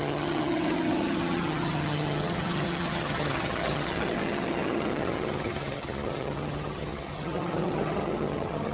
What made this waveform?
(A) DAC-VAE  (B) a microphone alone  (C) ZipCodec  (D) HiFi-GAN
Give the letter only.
D